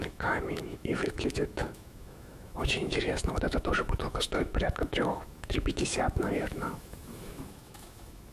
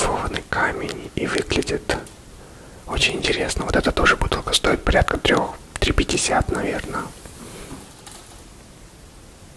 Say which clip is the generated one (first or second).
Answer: first